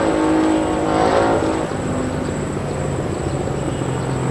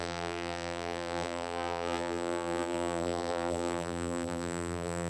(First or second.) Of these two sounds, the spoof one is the second